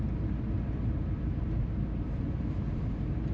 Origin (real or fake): fake